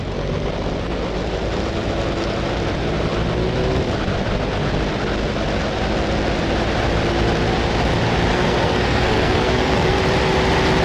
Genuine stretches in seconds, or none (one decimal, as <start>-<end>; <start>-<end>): 0.0-8.3; 10.0-10.8